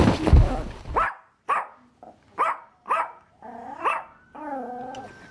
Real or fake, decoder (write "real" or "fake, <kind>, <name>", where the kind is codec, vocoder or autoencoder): real